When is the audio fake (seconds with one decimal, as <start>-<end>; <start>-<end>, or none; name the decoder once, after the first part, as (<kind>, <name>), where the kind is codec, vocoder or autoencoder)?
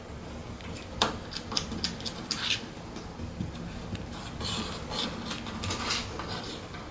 none